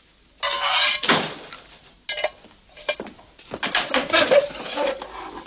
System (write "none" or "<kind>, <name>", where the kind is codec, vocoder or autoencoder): none